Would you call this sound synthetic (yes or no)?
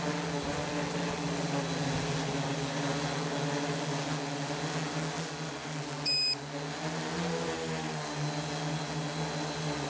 no